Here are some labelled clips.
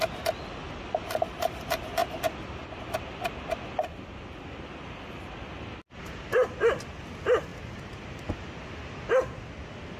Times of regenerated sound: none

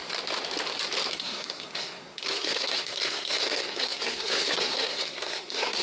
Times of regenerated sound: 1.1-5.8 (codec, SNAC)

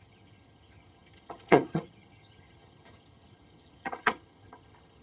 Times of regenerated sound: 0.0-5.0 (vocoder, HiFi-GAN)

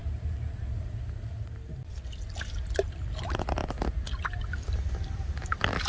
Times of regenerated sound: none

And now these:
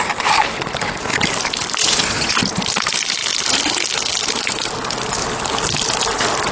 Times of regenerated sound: 1.8-2.4 (vocoder, Vocos)

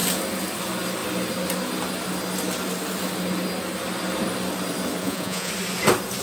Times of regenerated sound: 5.0-5.5 (vocoder, Vocos)

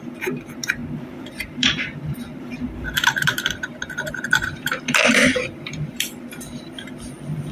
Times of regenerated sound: 0.0-7.5 (vocoder, BigVGAN v2)

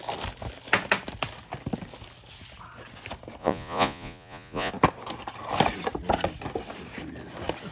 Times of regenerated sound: 3.4-4.7 (vocoder, Vocos)